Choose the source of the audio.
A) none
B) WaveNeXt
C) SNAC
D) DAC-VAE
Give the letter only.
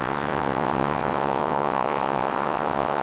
B